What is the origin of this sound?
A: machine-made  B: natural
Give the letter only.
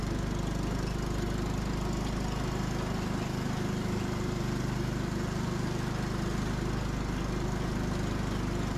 B